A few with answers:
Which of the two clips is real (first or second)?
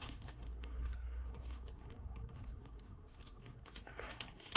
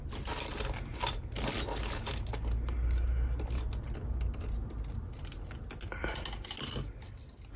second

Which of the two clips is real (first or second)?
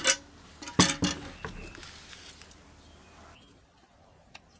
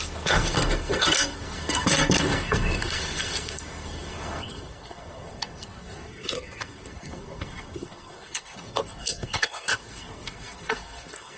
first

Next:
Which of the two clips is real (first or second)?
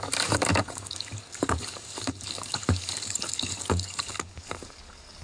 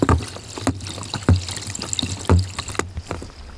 second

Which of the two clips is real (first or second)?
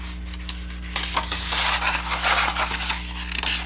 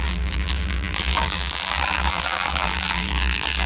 first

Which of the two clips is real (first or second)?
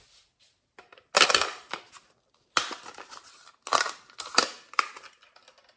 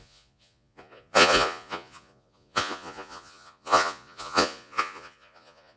first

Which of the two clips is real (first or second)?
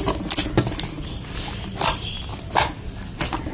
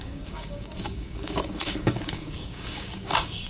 first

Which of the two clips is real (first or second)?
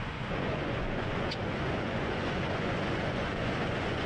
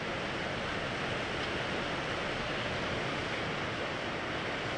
second